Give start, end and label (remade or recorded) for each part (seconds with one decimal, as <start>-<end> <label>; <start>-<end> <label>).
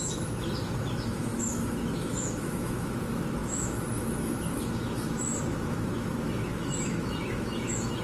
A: 0.0-8.0 remade